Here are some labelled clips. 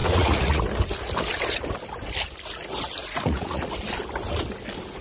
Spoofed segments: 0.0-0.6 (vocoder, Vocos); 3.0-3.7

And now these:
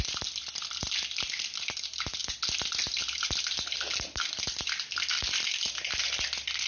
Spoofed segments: none

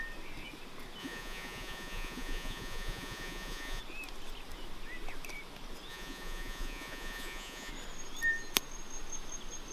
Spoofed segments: 1.0-3.8 (vocoder, Vocos); 5.9-7.7

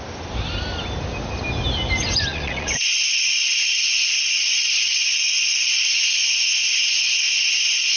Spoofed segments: 2.3-5.3 (vocoder, Vocos)